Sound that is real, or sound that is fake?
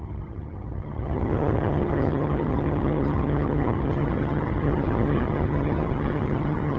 fake